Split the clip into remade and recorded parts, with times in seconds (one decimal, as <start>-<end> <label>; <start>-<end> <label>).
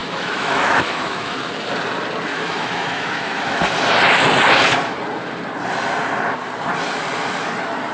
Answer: 0.0-1.5 remade; 1.5-2.3 recorded; 2.3-3.6 remade; 3.6-7.9 recorded